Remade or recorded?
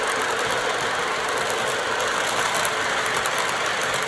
recorded